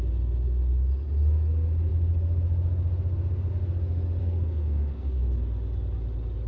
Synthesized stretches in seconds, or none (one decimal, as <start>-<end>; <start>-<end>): 4.2-5.2